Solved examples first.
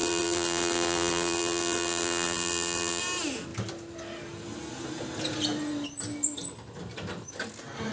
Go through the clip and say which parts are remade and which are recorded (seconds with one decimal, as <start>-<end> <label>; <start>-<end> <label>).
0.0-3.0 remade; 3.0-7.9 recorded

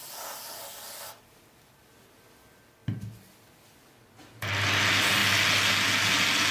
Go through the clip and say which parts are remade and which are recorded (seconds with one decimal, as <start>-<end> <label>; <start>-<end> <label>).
0.0-6.5 recorded

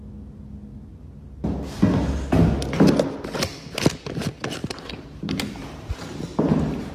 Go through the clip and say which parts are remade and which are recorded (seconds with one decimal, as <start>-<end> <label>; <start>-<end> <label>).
0.0-4.6 recorded; 4.6-6.9 remade

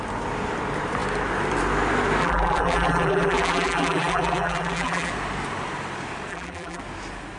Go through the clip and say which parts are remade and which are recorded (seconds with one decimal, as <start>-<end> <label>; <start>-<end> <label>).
0.0-2.2 recorded; 2.2-5.1 remade; 5.1-6.3 recorded; 6.3-6.8 remade; 6.8-7.4 recorded